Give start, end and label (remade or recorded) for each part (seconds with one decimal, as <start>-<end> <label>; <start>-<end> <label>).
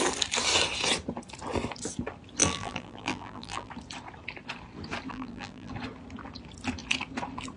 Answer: 0.0-2.4 recorded; 2.4-3.7 remade; 3.7-5.1 recorded; 5.1-5.7 remade; 5.7-7.6 recorded